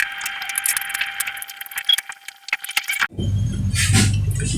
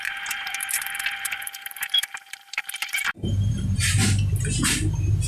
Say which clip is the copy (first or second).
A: second